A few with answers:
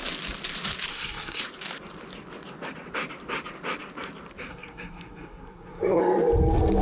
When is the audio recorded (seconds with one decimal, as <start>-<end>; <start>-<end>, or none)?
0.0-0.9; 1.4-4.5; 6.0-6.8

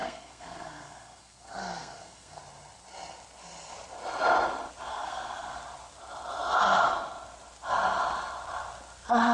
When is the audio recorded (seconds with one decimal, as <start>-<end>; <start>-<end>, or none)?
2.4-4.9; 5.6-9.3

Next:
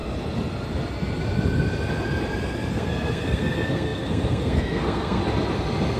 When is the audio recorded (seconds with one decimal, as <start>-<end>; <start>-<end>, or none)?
0.0-2.7; 5.2-6.0

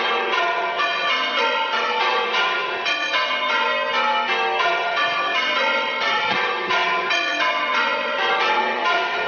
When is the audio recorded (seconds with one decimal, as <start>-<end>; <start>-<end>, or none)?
3.7-4.6

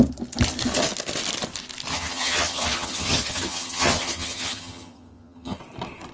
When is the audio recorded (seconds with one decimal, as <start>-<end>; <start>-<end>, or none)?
0.0-1.9; 5.6-6.1